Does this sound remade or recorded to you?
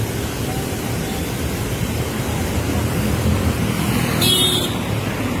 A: remade